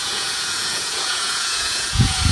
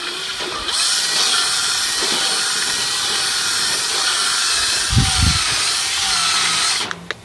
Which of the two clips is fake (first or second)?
first